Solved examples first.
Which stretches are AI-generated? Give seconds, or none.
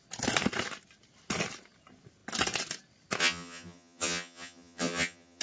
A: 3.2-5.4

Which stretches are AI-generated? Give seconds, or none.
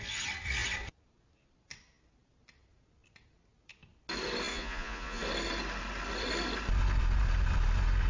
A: 4.5-5.2